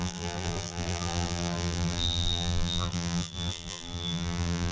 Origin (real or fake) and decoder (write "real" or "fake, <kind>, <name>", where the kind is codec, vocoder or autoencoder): fake, vocoder, BigVGAN v2